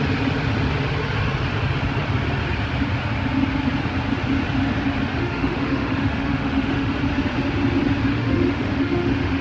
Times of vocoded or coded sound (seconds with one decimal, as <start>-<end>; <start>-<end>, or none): 5.1-6.9; 8.1-9.4